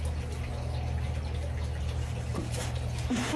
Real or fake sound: real